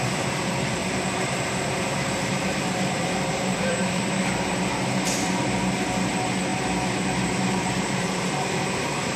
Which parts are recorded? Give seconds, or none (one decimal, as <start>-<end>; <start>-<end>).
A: 0.8-2.3